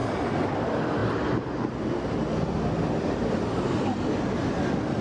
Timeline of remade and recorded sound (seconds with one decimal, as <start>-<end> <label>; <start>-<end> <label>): 0.0-5.0 recorded